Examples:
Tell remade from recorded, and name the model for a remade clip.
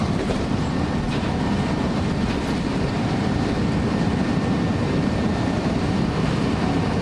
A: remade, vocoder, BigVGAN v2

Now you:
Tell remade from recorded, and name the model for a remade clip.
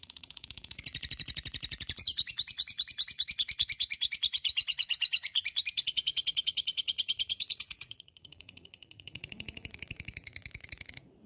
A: remade, vocoder, Vocos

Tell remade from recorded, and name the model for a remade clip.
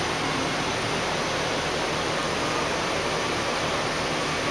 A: recorded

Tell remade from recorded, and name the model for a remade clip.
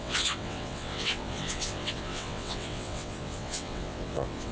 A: remade, vocoder, WaveNeXt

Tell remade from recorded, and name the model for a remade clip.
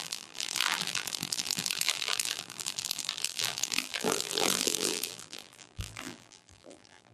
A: remade, vocoder, BigVGAN v2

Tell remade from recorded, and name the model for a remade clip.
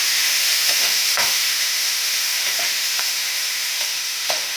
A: remade, autoencoder, DAC-VAE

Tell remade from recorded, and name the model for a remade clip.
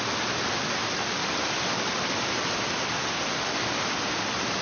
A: recorded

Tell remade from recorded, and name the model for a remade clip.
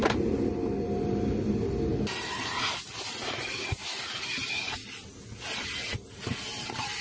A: recorded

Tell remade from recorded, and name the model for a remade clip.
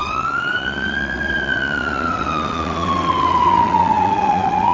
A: remade, vocoder, WaveNeXt